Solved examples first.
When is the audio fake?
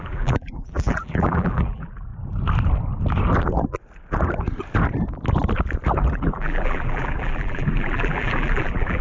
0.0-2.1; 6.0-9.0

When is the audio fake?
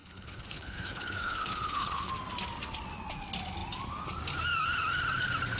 0.0-2.1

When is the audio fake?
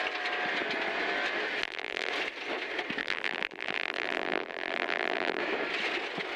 1.6-2.1; 3.0-5.4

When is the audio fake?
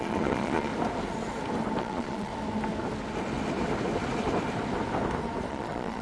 0.0-0.7; 1.8-2.3; 5.5-6.0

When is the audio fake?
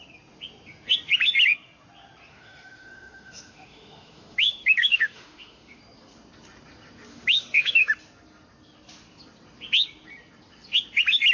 2.3-5.8; 7.1-7.9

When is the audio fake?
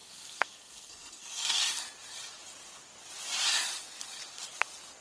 0.0-1.8